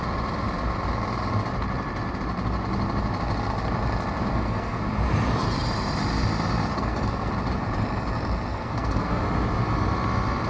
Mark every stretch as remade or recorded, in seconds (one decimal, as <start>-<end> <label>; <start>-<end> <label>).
0.0-4.3 recorded; 4.3-4.8 remade; 4.8-6.7 recorded; 6.7-7.3 remade; 7.3-8.5 recorded; 8.5-9.2 remade; 9.2-10.5 recorded